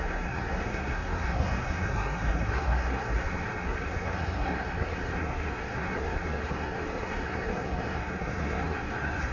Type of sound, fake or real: fake